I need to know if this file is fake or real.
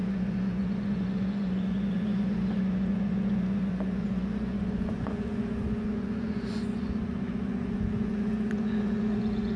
fake